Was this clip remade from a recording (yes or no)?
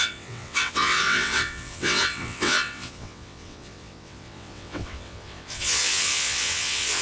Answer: yes